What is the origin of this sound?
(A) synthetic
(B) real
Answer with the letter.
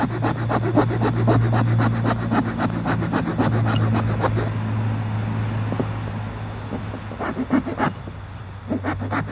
B